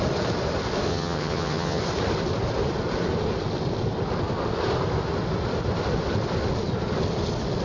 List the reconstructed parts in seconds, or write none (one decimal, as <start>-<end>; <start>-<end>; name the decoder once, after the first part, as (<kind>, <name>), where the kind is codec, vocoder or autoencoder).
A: 0.9-1.8 (vocoder, HiFi-GAN)